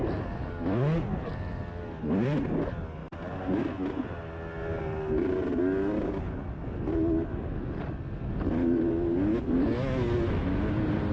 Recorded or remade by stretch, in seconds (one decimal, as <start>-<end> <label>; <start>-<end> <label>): 0.0-11.1 recorded